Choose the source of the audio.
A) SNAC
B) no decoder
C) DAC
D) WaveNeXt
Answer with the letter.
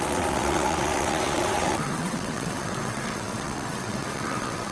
D